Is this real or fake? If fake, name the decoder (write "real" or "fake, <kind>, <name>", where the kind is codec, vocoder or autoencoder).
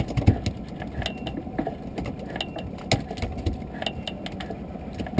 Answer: real